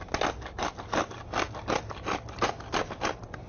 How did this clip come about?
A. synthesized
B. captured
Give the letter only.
B